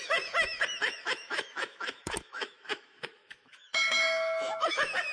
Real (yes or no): no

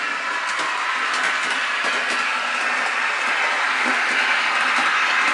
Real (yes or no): yes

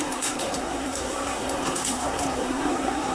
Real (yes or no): no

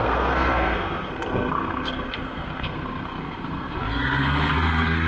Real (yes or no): no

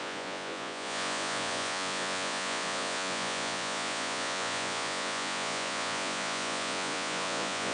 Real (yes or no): no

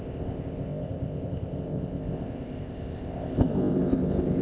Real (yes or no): no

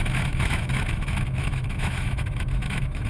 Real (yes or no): no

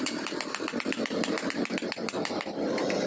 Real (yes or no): yes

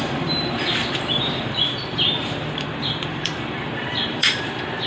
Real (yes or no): no